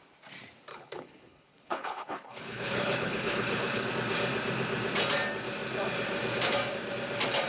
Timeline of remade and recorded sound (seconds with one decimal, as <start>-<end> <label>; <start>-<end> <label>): 0.0-0.7 recorded; 0.7-3.9 remade; 3.9-7.5 recorded